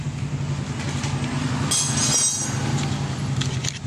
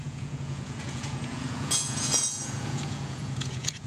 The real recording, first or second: first